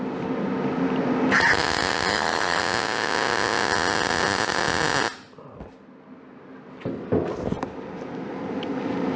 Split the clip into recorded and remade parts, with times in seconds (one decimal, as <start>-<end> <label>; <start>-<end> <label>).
0.0-2.1 recorded; 2.1-2.6 remade; 2.6-9.2 recorded